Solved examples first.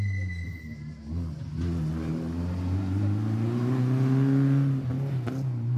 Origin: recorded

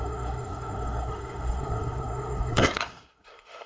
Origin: remade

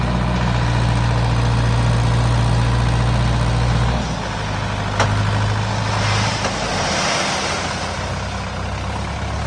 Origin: recorded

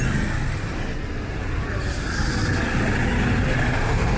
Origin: recorded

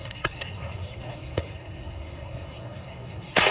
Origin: remade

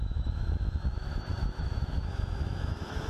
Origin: remade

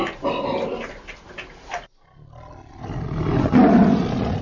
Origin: recorded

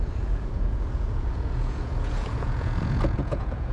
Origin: remade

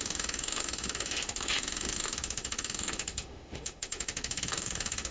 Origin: remade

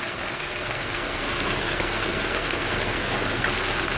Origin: remade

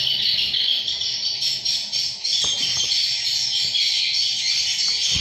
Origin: recorded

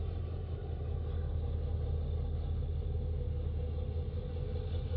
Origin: recorded